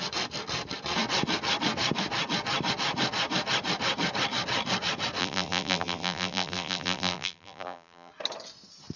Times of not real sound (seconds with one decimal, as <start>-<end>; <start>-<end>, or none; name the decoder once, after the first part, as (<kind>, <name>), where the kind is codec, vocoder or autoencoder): 5.2-8.1 (vocoder, BigVGAN v2)